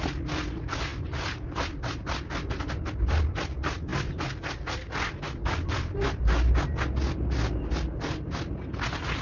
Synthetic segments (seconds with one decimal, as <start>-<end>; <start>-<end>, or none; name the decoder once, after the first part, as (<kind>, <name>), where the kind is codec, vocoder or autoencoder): none